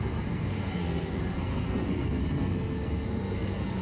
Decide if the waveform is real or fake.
fake